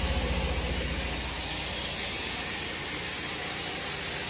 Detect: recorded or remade recorded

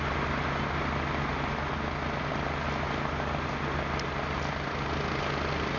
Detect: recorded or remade recorded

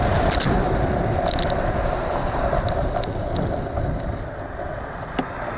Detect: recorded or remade remade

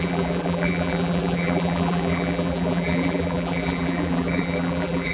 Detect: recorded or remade remade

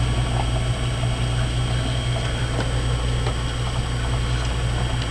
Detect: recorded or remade recorded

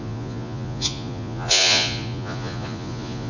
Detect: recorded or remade remade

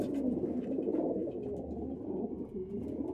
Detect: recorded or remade recorded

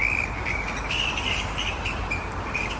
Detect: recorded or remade recorded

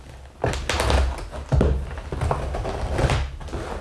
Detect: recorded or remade recorded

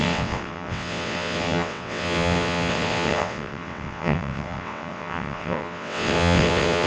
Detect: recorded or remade remade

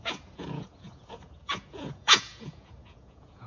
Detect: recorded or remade remade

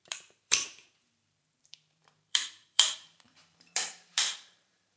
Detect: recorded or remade remade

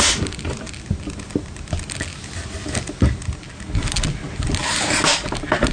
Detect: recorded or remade recorded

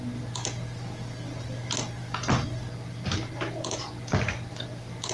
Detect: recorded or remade recorded